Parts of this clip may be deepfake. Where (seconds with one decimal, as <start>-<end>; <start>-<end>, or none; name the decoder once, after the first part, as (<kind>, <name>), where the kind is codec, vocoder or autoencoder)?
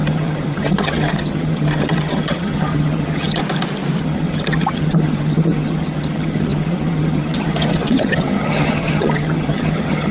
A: 0.0-3.4 (vocoder, HiFi-GAN); 4.0-10.1